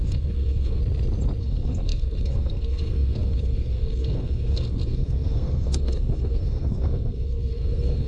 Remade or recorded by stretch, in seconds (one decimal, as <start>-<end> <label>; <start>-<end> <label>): 0.0-0.8 remade; 0.8-1.4 recorded; 1.4-8.1 remade